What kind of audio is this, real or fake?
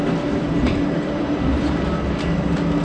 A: real